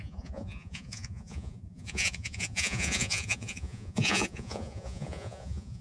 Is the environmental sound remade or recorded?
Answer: remade